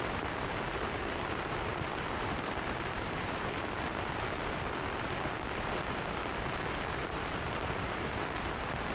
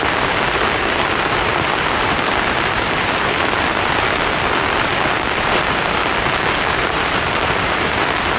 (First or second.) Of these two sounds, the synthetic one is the first